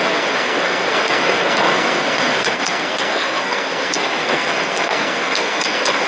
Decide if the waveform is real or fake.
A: fake